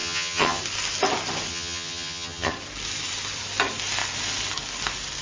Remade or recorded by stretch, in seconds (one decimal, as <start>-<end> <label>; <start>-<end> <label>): 0.0-0.6 remade; 0.6-1.5 recorded; 1.5-2.5 remade; 2.5-5.2 recorded